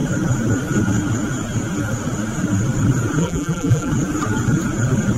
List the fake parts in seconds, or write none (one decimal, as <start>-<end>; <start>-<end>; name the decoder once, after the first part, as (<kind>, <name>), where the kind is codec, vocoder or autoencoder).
3.2-3.9 (vocoder, BigVGAN v2)